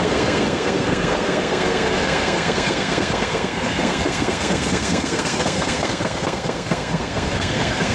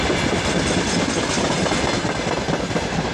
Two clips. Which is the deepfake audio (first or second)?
first